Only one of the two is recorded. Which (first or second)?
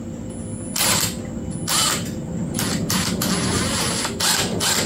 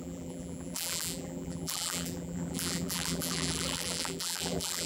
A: first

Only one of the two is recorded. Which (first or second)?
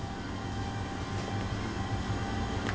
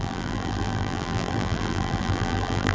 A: first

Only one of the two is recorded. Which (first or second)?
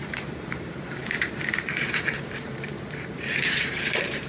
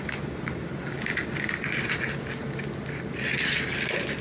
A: second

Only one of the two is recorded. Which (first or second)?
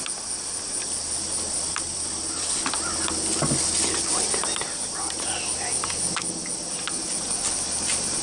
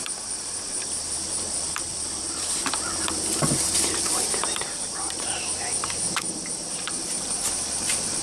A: first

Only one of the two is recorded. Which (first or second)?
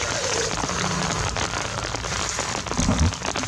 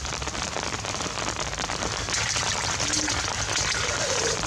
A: first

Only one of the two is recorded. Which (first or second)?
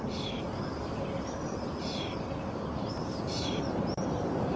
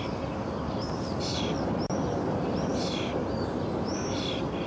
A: second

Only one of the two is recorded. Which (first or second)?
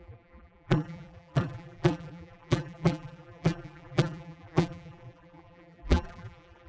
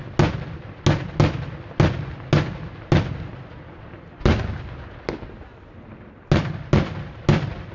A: second